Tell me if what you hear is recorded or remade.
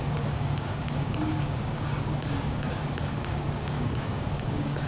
remade